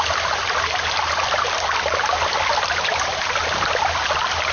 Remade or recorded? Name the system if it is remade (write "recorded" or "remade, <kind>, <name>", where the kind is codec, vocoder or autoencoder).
recorded